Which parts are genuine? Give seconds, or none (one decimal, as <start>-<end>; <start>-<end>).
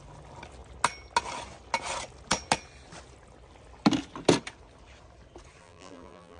0.0-5.6